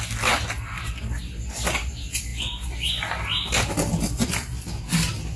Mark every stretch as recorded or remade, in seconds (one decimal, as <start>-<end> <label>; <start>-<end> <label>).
0.0-5.4 recorded